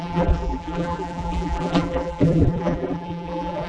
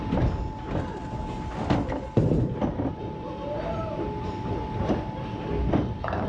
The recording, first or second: second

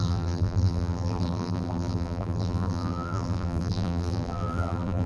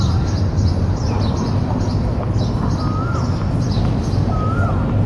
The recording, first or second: second